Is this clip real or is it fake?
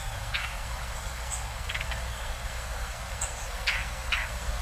fake